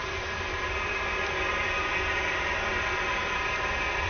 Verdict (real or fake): real